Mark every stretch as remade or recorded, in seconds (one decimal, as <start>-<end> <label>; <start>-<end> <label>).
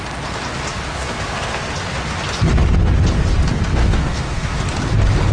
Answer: 0.0-0.9 recorded; 0.9-1.6 remade; 1.6-3.8 recorded; 3.8-4.6 remade; 4.6-5.3 recorded